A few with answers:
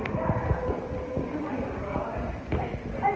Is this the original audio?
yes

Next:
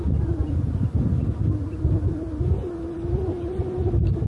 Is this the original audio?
yes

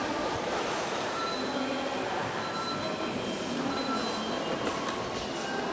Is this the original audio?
yes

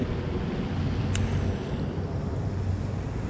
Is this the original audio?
yes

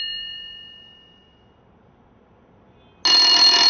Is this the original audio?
yes